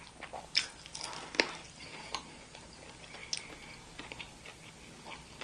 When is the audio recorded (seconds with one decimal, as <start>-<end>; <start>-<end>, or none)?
0.0-5.4